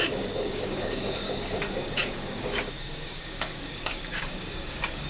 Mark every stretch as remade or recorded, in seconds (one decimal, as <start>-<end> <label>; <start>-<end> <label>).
0.0-5.1 remade